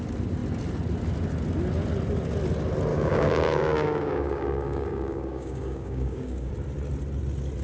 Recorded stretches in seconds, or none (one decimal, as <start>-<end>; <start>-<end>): 0.0-2.9; 6.5-7.6